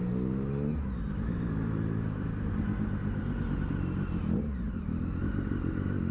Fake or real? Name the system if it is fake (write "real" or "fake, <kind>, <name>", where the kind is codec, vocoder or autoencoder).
real